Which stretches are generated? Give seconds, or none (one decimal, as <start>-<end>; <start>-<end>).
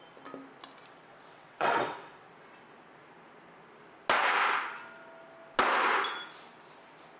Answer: 0.9-2.3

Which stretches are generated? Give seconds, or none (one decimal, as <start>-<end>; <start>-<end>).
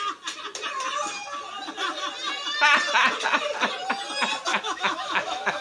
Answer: 4.5-5.6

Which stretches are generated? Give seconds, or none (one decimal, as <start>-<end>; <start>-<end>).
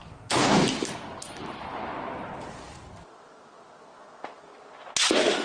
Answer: 0.0-0.5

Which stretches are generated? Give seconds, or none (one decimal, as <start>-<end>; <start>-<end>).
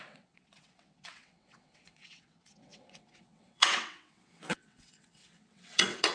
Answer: 0.0-6.1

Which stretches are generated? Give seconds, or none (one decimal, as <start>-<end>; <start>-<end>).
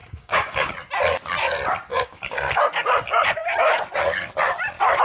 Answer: 0.0-0.7; 1.9-2.6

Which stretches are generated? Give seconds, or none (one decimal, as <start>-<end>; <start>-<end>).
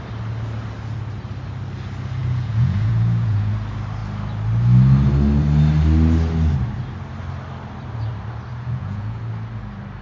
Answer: 2.2-3.5; 8.5-9.3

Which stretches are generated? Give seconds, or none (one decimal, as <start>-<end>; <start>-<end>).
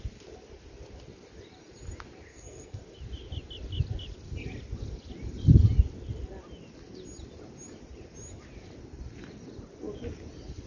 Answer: 2.3-2.8